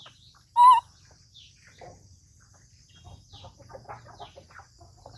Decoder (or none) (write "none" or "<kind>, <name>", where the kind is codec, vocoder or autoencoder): none